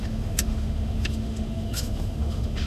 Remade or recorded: remade